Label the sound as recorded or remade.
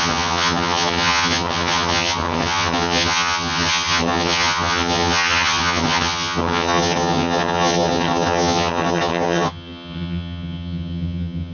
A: remade